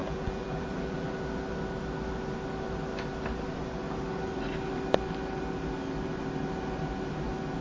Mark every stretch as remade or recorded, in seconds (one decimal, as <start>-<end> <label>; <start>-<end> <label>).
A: 0.0-1.1 remade; 1.1-7.6 recorded